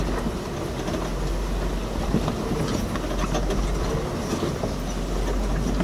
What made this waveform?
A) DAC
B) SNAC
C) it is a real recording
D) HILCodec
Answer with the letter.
C